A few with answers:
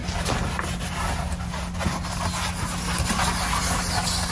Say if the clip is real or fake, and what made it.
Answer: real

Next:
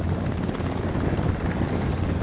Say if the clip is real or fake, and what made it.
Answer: real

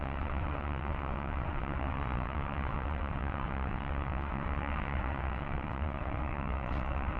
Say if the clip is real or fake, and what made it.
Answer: fake, vocoder, WaveNeXt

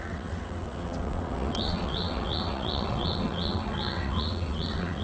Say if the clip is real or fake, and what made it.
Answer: fake, vocoder, WaveNeXt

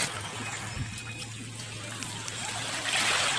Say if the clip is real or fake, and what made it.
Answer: real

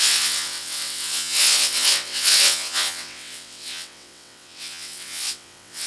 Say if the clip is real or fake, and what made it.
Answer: fake, vocoder, WaveNeXt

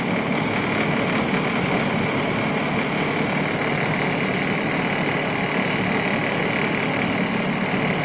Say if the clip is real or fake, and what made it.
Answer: real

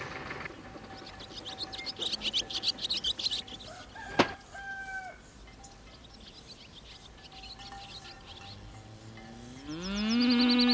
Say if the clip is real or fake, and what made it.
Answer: real